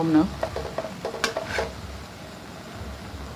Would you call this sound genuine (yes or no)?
yes